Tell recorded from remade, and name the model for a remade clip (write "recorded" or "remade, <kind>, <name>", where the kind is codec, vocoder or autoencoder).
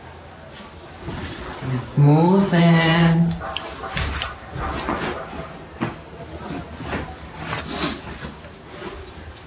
recorded